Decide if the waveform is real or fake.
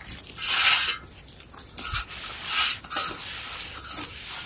real